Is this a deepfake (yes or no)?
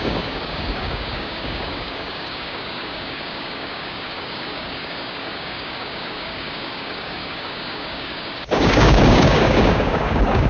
yes